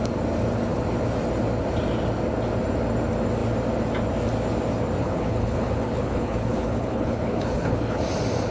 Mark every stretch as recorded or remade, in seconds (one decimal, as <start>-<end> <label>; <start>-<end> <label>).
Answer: 0.0-5.0 recorded; 5.0-8.0 remade; 8.0-8.5 recorded